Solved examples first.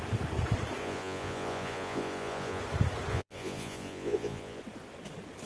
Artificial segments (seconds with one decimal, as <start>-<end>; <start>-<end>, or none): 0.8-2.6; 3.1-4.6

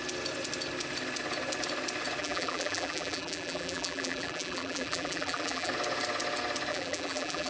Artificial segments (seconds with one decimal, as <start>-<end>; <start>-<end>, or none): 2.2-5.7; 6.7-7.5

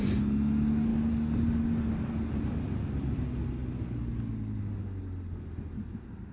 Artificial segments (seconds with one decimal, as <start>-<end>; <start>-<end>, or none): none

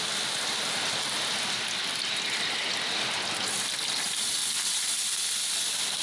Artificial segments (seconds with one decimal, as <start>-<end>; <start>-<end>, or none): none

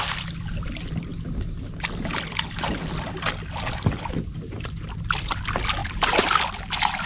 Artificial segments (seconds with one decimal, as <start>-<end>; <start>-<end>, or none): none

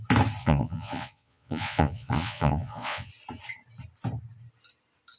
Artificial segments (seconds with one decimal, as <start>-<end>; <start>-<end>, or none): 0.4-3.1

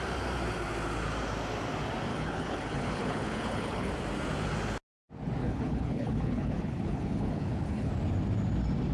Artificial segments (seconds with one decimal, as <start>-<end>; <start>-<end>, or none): 2.1-3.9; 5.4-7.9

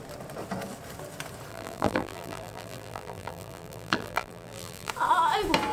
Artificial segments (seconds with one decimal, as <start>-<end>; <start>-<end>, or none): 1.5-4.9